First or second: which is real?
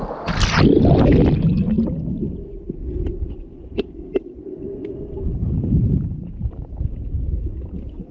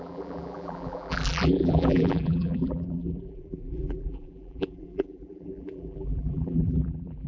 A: first